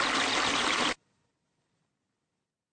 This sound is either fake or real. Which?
real